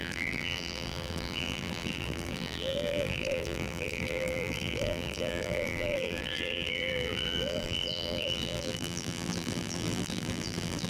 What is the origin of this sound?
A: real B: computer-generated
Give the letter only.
B